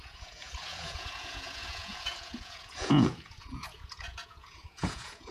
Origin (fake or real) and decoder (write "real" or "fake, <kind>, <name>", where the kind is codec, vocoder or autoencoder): fake, vocoder, Vocos